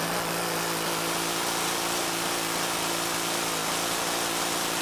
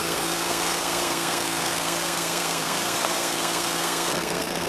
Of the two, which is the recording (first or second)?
first